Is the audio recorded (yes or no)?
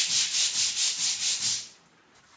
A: yes